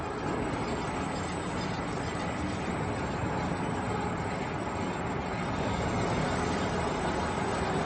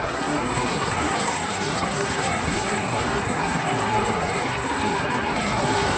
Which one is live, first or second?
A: first